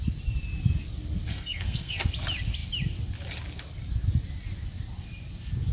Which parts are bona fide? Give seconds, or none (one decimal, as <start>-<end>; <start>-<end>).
0.0-1.3; 2.0-5.7